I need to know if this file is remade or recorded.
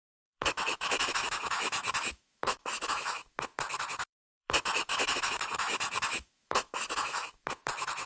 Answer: remade